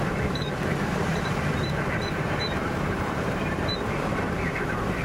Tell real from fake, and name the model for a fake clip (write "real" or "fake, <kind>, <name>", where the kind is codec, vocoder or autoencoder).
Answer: fake, vocoder, BigVGAN v2